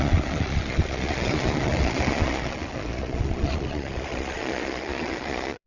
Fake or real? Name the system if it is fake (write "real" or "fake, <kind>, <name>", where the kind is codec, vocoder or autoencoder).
fake, vocoder, Vocos